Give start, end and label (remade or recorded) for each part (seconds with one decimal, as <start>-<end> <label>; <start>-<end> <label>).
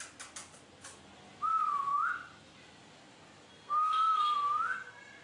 0.0-3.5 recorded; 3.5-4.2 remade; 4.2-5.2 recorded